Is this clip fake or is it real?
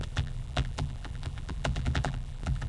fake